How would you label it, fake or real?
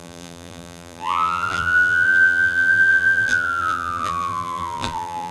fake